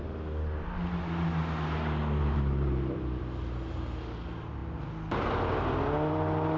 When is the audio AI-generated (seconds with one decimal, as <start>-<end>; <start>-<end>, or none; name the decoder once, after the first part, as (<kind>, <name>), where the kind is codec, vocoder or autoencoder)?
2.2-3.2 (vocoder, BigVGAN v2)